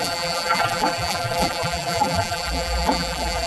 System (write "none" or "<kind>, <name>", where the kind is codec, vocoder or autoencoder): vocoder, BigVGAN v2